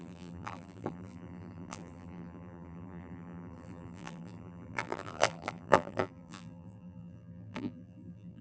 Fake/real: fake